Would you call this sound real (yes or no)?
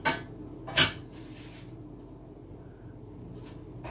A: yes